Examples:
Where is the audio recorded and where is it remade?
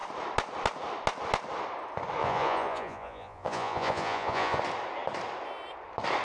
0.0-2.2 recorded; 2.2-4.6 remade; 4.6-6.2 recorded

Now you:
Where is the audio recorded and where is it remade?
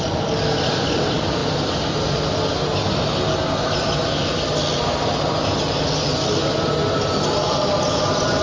0.0-8.4 recorded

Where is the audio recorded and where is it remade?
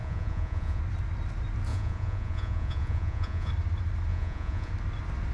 0.0-0.8 remade; 0.8-1.7 recorded; 1.7-3.5 remade; 3.5-4.1 recorded; 4.1-4.7 remade; 4.7-5.3 recorded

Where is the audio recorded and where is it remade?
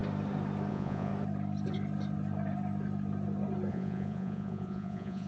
0.0-0.7 recorded; 0.7-1.1 remade; 1.1-3.7 recorded; 3.7-5.3 remade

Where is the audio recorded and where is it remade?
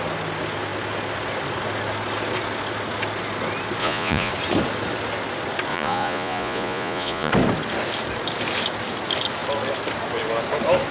0.0-3.8 recorded; 3.8-4.3 remade; 4.3-5.7 recorded; 5.7-7.3 remade; 7.3-10.9 recorded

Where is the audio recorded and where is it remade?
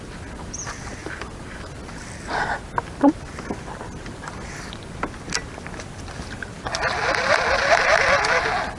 0.0-8.8 recorded